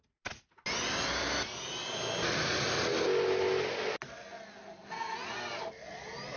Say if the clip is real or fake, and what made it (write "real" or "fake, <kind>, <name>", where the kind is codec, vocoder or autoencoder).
real